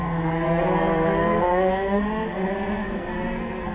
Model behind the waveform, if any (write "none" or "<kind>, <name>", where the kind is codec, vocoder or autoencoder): codec, SNAC